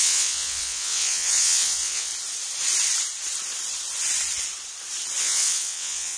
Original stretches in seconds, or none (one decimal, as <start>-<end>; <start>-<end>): 2.1-5.2